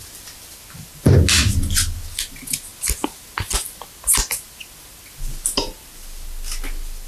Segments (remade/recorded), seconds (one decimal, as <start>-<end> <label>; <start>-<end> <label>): 0.0-7.1 recorded